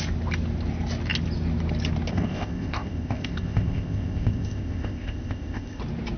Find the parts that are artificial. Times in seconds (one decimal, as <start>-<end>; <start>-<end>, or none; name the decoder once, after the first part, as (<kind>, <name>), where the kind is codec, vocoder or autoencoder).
2.1-5.8 (codec, ZipCodec)